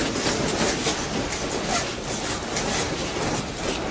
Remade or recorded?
recorded